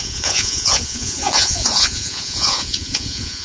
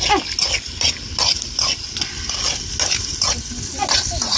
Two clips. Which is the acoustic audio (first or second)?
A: second